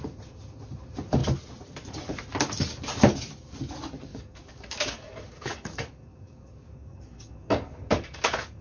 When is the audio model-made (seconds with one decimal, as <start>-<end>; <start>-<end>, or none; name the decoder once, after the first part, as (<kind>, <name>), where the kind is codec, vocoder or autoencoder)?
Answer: 4.1-8.6 (codec, DAC)